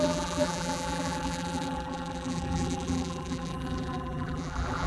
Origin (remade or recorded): remade